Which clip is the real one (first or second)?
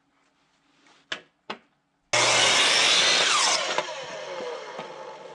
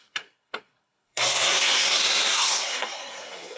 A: first